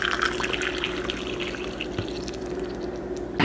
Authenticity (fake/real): real